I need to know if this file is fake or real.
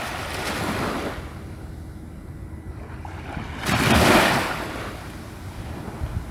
real